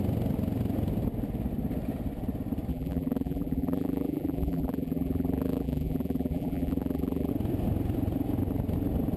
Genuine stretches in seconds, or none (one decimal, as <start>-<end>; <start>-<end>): 0.0-2.7; 7.3-9.2